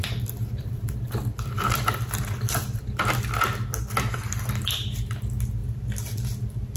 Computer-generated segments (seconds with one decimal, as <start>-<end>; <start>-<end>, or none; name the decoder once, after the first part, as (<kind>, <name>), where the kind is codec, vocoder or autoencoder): 0.0-3.1 (vocoder, BigVGAN v2); 5.6-6.8